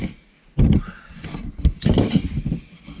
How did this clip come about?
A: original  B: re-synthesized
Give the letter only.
A